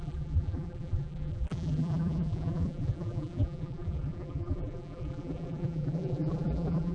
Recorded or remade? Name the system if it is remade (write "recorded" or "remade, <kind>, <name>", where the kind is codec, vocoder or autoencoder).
remade, vocoder, BigVGAN v2